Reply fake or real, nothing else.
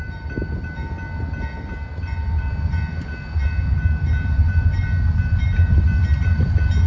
real